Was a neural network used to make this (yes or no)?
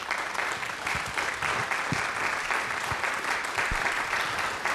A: yes